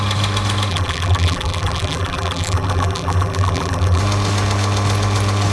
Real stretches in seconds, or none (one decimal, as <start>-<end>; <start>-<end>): 0.0-0.7; 4.0-5.5